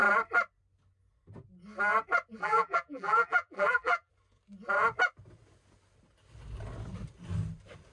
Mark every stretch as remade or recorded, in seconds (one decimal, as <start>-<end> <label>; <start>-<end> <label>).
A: 0.0-2.4 recorded; 2.4-4.1 remade; 4.1-7.9 recorded